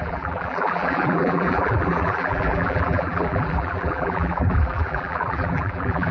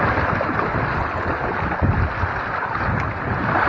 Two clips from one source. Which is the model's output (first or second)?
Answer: first